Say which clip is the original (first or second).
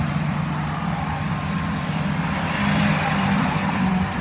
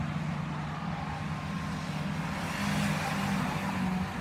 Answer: second